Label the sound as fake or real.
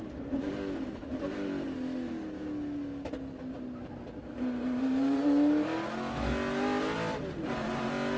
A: real